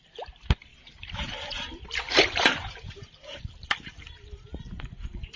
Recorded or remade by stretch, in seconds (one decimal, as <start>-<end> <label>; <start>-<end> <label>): 0.0-0.7 recorded; 0.7-3.4 remade; 3.4-5.4 recorded